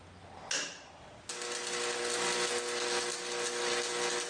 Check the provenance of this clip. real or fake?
real